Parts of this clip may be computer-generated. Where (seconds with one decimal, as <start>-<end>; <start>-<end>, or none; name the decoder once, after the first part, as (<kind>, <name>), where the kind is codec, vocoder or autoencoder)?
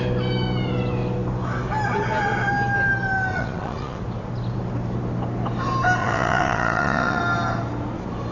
3.3-4.0 (vocoder, Vocos); 6.0-7.2